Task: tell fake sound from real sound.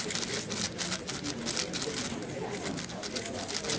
real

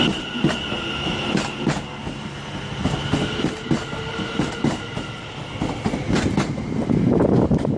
real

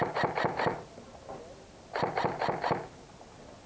real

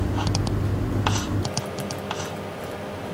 real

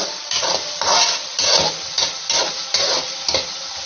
real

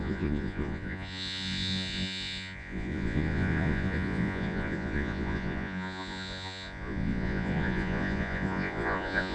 fake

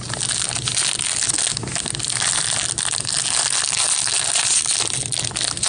real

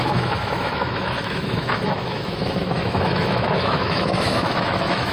fake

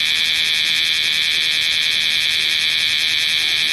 real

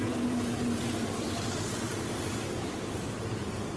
real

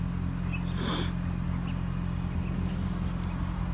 real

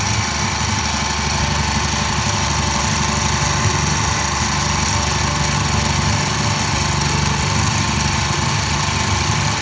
real